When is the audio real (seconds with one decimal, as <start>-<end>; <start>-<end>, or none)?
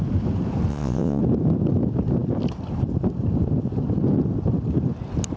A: 0.0-0.7; 1.2-5.4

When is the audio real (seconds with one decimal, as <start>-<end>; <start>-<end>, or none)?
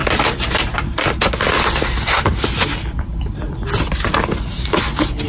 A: 0.0-5.3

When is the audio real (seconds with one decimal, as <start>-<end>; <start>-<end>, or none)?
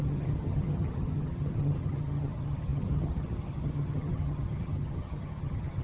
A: none